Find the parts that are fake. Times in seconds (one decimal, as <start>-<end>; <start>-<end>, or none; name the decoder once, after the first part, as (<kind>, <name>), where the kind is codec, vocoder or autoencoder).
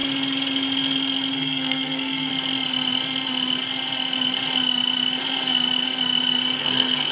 1.3-2.3 (codec, SNAC); 6.6-7.1